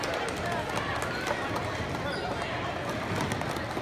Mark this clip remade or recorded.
recorded